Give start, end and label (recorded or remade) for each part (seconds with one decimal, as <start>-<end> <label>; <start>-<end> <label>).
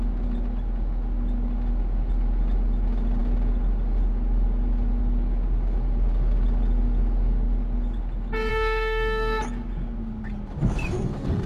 0.0-8.5 recorded; 8.5-9.4 remade; 9.4-11.5 recorded